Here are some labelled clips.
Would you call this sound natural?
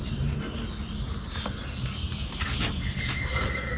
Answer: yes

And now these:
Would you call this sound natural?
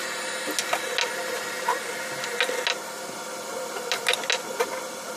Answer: yes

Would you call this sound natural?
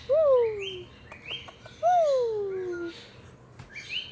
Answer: yes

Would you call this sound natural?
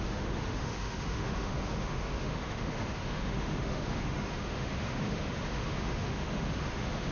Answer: no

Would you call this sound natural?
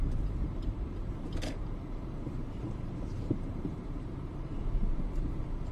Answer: no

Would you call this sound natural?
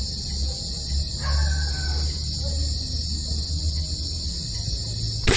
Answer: yes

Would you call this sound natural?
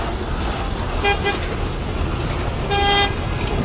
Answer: yes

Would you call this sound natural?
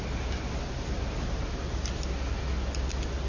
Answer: yes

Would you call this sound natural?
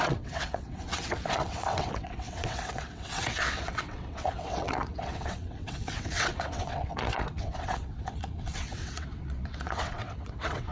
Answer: no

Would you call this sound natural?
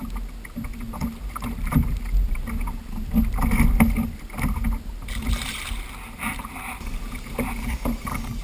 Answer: yes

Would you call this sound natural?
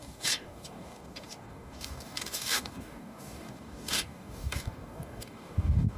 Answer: no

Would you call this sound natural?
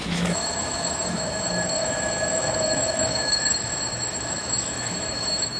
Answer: no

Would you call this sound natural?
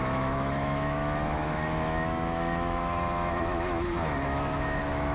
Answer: no